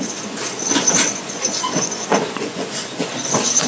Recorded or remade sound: remade